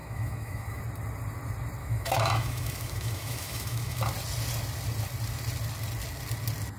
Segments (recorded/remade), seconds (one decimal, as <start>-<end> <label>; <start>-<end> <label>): 0.0-0.8 remade; 0.8-1.8 recorded; 1.8-4.0 remade; 4.0-6.8 recorded